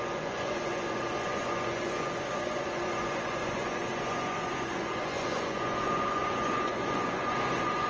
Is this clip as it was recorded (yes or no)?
no